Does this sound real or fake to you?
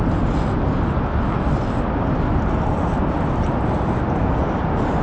real